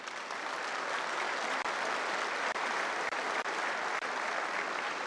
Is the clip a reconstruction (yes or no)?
yes